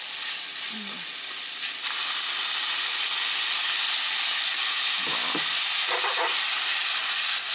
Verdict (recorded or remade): recorded